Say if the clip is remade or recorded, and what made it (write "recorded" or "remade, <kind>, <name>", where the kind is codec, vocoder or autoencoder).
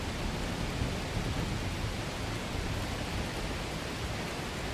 recorded